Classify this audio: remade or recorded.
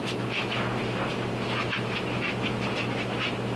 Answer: recorded